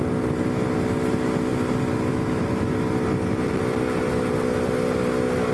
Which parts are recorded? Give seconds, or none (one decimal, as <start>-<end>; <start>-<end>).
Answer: 0.0-5.5